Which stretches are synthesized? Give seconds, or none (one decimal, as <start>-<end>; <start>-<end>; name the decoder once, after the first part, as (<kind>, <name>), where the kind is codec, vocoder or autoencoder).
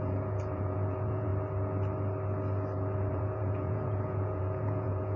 0.0-1.3 (vocoder, Vocos); 3.1-5.2